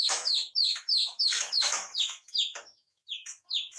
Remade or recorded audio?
remade